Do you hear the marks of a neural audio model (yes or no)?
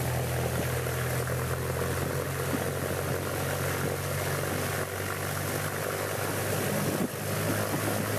no